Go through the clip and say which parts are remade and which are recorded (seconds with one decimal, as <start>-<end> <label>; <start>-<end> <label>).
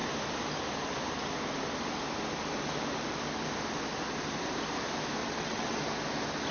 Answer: 0.0-5.2 recorded; 5.2-5.8 remade; 5.8-6.5 recorded